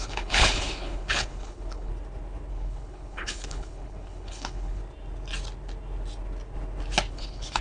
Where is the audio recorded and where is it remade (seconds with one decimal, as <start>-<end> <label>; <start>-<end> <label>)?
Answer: 0.0-1.9 remade; 1.9-2.5 recorded; 2.5-4.8 remade; 4.8-7.1 recorded; 7.1-7.6 remade